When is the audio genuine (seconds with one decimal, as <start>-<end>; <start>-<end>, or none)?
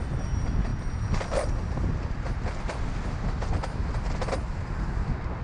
0.0-5.4